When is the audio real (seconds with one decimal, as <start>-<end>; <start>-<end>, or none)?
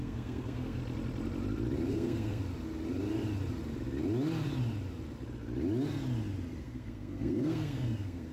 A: 0.8-1.9; 2.4-6.6